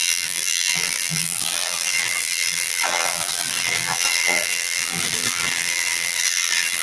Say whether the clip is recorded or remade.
remade